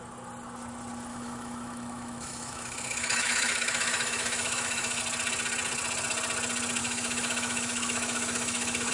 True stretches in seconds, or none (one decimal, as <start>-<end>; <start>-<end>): 0.0-1.1; 5.0-6.8